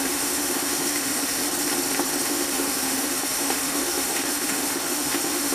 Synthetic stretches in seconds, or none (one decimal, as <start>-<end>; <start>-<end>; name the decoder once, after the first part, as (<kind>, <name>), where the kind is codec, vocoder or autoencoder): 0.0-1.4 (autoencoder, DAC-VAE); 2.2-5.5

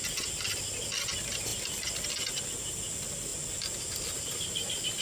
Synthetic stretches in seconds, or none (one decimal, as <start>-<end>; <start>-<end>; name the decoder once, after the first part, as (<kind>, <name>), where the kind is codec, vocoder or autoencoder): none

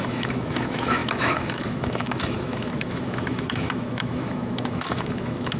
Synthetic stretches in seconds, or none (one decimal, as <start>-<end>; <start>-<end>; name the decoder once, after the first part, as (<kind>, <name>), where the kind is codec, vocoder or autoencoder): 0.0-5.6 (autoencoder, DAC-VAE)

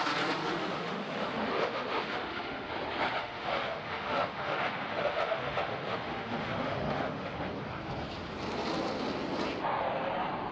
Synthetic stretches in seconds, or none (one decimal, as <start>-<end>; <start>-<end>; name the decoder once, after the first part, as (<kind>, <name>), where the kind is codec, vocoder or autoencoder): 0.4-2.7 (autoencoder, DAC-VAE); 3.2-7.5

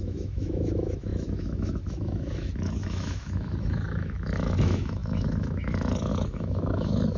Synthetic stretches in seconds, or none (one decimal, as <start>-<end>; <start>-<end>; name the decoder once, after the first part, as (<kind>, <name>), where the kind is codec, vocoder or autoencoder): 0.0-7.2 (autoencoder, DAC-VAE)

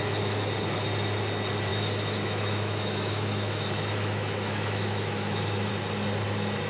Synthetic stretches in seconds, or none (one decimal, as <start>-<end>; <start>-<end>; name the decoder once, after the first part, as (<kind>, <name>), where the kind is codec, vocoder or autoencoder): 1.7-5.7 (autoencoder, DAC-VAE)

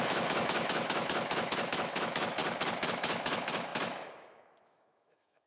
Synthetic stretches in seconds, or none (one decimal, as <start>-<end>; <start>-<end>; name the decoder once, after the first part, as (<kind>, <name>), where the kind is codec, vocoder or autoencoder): 0.0-2.4 (autoencoder, DAC-VAE); 2.9-5.5